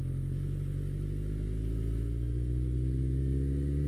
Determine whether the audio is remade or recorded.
recorded